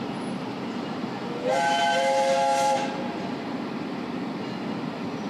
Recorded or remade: recorded